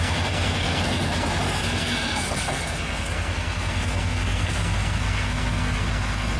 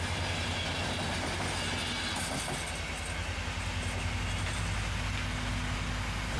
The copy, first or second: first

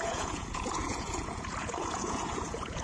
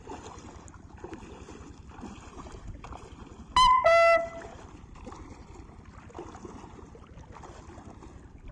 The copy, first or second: first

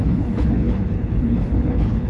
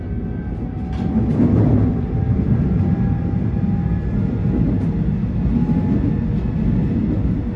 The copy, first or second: first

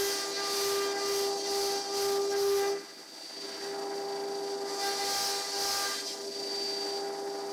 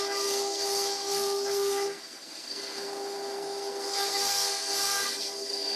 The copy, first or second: second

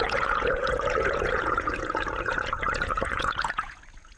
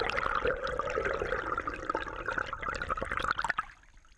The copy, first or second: first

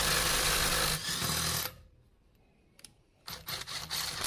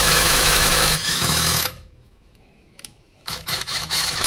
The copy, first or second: second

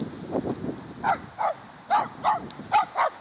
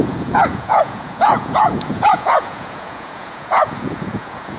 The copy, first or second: second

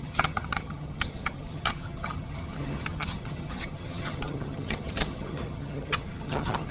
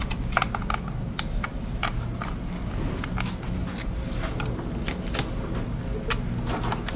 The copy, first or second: first